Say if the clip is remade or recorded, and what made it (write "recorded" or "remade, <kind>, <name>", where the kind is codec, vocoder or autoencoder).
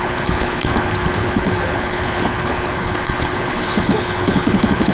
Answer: remade, codec, HILCodec